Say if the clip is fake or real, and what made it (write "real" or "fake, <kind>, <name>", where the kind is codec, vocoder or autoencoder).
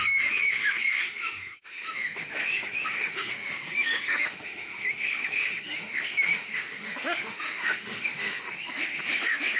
fake, autoencoder, DAC-VAE